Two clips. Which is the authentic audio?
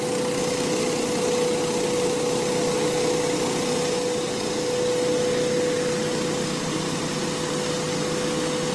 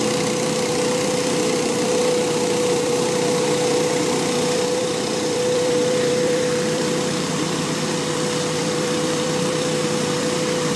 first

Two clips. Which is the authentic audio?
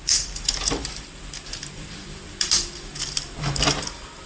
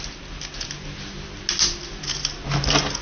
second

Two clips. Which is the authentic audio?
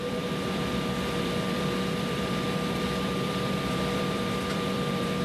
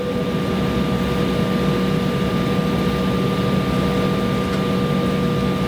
second